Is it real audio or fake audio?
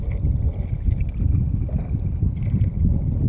real